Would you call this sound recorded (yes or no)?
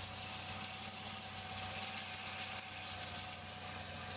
yes